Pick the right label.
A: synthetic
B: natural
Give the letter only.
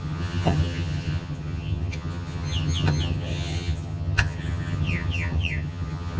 A